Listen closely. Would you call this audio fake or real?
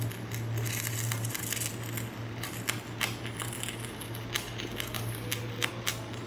real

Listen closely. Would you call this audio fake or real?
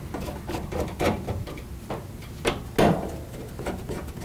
real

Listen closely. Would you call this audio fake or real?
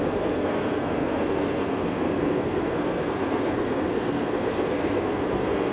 fake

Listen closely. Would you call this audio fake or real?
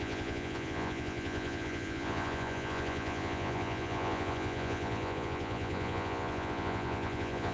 fake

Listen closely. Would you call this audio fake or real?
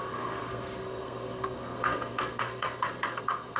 fake